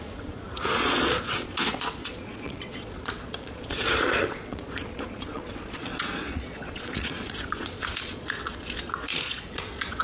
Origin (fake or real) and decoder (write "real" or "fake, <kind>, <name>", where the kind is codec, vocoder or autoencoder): fake, vocoder, Vocos